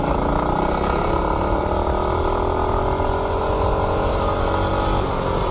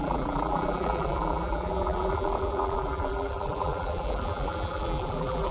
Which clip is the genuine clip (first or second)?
first